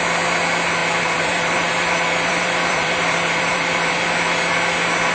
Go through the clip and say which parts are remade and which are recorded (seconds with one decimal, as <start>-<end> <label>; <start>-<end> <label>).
0.0-0.8 recorded; 0.8-3.9 remade; 3.9-5.1 recorded